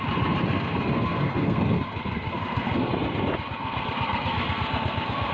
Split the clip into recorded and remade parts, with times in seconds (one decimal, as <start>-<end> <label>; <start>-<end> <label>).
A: 0.0-0.5 recorded; 0.5-2.9 remade; 2.9-3.6 recorded; 3.6-5.3 remade